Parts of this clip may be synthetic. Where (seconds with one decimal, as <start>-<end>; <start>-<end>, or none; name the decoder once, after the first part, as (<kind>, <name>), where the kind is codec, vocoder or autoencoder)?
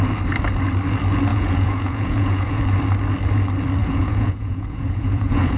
1.3-2.6 (vocoder, Vocos); 3.8-5.6